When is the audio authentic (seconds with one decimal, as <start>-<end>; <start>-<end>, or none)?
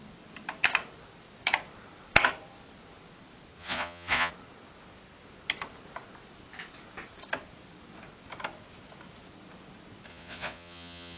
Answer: 0.0-3.6; 4.3-10.1